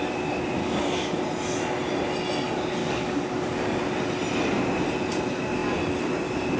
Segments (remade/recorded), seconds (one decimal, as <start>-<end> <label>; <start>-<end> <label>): 0.0-0.6 recorded; 0.6-1.2 remade; 1.2-2.8 recorded; 2.8-3.8 remade; 3.8-6.6 recorded